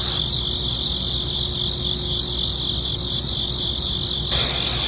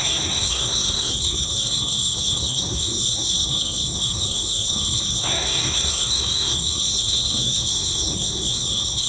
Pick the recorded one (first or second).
first